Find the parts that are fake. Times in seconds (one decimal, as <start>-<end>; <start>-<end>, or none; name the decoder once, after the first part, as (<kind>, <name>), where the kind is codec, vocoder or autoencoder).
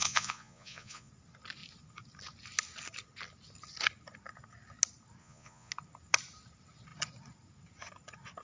0.0-1.1 (vocoder, Vocos); 5.2-5.7